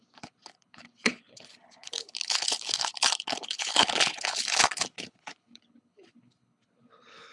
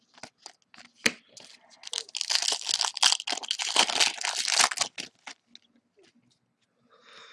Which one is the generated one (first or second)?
first